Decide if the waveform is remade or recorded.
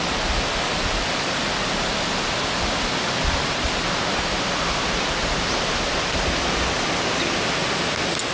recorded